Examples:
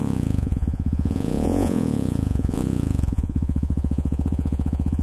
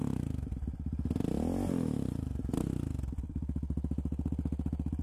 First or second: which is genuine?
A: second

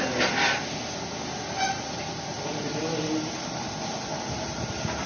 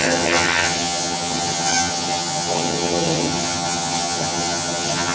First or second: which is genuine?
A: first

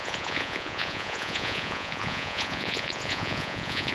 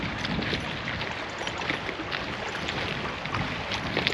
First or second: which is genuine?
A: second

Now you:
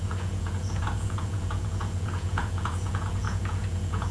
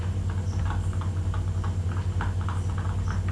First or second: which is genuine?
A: second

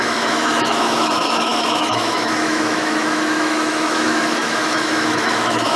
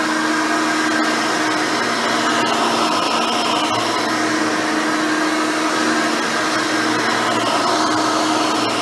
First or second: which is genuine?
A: second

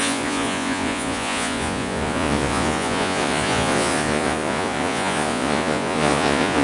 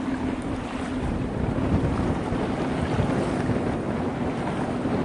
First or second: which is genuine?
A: second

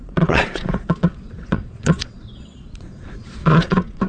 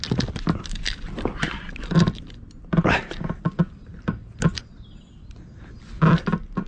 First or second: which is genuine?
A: second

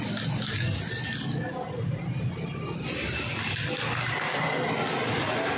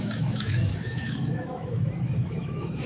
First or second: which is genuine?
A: first